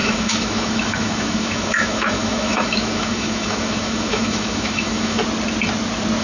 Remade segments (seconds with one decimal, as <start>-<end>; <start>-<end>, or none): 0.0-5.2